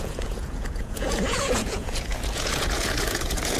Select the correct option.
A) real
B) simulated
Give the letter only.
B